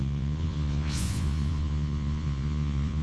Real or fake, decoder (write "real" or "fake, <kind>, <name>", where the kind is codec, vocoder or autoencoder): fake, vocoder, Vocos